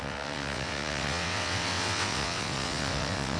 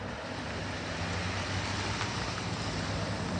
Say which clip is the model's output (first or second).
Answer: first